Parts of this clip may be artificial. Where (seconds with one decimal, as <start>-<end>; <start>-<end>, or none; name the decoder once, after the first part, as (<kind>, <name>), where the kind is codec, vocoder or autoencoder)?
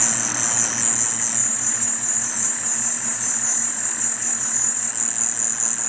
1.4-4.9 (vocoder, BigVGAN v2)